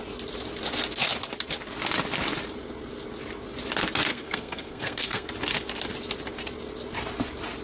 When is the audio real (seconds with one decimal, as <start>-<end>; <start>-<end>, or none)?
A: 0.0-4.1; 5.3-7.6